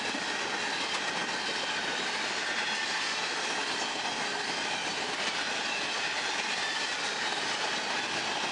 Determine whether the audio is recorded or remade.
recorded